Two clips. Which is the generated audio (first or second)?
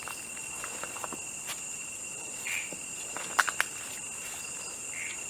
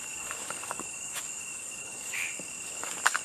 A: second